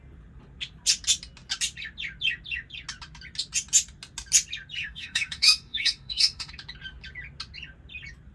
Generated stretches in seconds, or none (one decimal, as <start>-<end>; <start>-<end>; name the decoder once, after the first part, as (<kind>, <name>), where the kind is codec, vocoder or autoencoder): 4.8-6.5 (autoencoder, DAC-VAE)